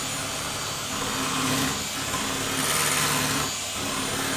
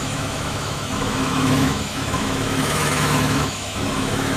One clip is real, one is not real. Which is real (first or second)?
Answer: first